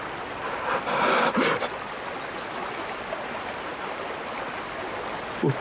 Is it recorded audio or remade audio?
recorded